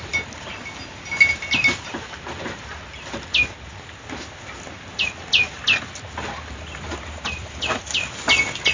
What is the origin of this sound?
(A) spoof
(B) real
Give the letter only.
B